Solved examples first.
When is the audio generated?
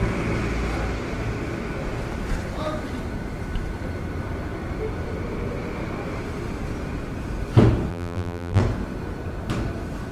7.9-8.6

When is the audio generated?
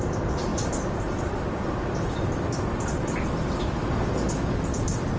none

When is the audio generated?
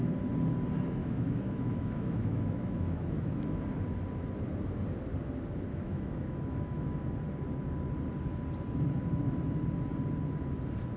1.0-3.6; 5.7-7.0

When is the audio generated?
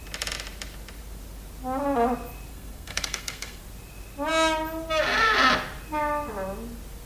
2.5-3.6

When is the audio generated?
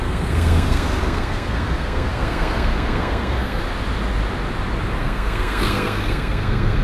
0.0-3.6; 5.0-6.8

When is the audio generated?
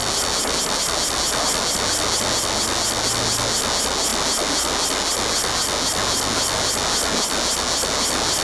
none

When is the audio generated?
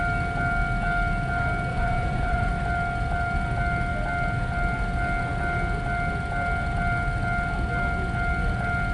1.7-2.5